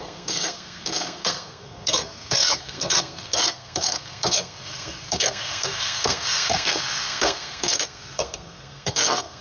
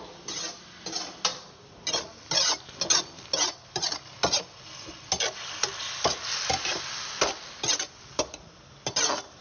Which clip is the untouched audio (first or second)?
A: second